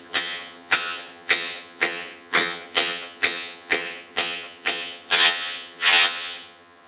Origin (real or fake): fake